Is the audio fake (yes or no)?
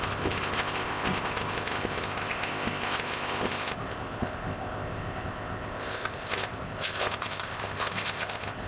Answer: yes